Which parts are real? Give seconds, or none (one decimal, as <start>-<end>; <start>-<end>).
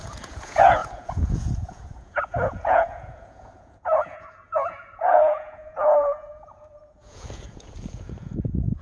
none